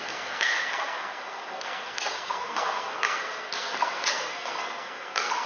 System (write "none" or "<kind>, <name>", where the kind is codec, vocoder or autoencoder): codec, SNAC